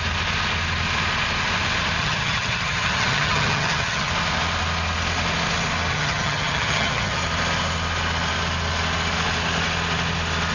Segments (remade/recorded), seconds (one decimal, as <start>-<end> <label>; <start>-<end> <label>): 0.0-2.0 recorded; 2.0-4.1 remade; 4.1-5.9 recorded; 5.9-7.2 remade; 7.2-10.5 recorded